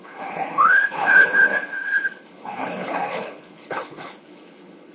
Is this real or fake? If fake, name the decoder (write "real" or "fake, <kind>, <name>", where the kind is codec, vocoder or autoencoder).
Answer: fake, codec, HILCodec